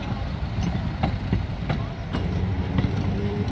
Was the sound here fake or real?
real